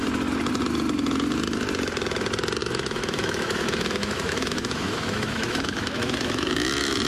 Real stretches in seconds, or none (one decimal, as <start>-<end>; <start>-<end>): 0.0-2.6